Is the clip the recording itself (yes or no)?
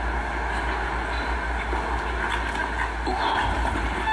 yes